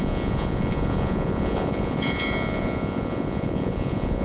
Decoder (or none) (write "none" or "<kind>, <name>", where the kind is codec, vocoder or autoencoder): vocoder, Vocos